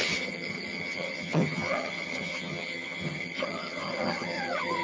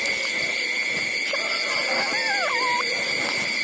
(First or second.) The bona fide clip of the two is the second